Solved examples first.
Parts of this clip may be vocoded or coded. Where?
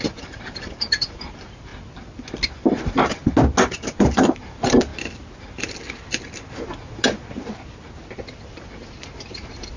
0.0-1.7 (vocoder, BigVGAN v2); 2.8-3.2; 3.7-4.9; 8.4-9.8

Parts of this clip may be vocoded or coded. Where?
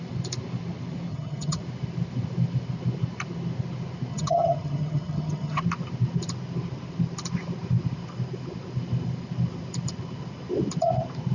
1.1-1.6 (vocoder, HiFi-GAN); 4.1-5.6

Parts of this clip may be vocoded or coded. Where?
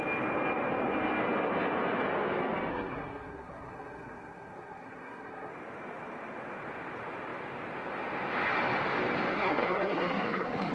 2.7-5.5 (codec, SNAC); 9.3-10.7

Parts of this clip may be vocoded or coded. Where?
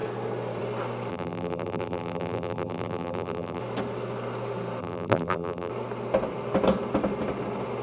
1.1-3.6 (vocoder, BigVGAN v2); 4.8-5.7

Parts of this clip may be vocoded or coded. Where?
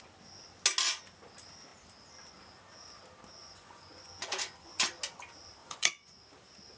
3.4-4.9 (vocoder, Vocos); 5.6-6.2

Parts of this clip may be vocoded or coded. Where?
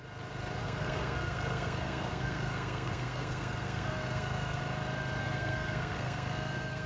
0.6-4.6 (codec, SNAC); 5.2-6.9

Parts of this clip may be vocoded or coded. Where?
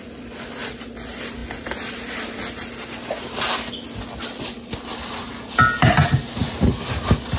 none